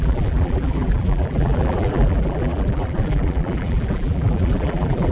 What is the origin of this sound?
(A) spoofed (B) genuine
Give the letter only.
A